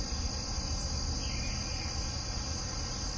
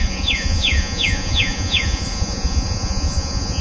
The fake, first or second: second